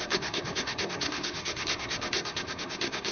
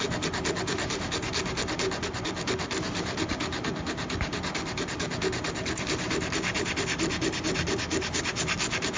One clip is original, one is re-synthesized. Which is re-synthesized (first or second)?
first